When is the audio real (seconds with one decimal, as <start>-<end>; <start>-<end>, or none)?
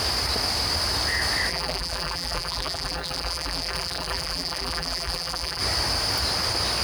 0.0-1.5; 5.6-6.8